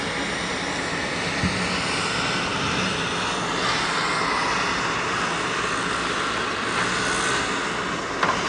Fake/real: real